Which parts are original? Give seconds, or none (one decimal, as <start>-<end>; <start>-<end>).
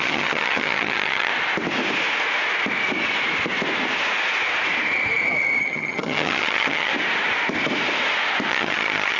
1.3-5.6; 6.9-8.5